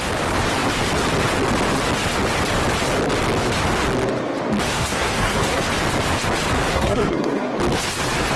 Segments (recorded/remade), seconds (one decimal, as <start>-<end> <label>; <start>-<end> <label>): 0.0-4.7 recorded; 4.7-5.6 remade; 5.6-6.7 recorded; 6.7-7.5 remade; 7.5-8.4 recorded